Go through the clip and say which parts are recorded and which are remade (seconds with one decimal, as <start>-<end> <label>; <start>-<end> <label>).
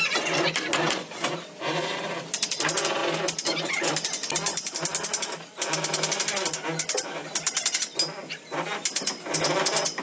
0.0-10.0 recorded